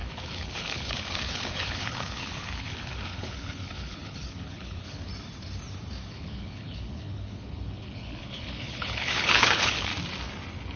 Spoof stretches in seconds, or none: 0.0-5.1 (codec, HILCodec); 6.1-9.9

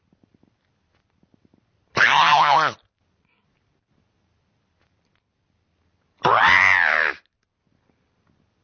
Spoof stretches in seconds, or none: none

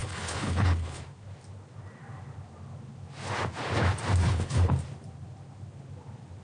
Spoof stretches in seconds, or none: 0.0-1.0 (codec, HILCodec); 4.2-4.7

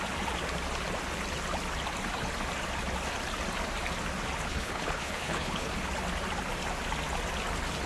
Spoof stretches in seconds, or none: 4.5-5.7 (codec, HILCodec)

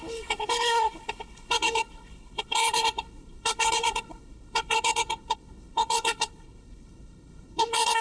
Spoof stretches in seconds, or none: 0.0-8.0 (codec, HILCodec)